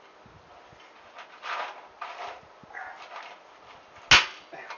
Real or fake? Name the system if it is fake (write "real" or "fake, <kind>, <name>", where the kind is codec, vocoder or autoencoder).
real